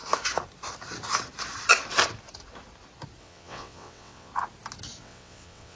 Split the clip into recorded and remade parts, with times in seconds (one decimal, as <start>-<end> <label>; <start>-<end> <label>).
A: 0.0-3.2 recorded; 3.2-4.3 remade; 4.3-5.0 recorded; 5.0-5.8 remade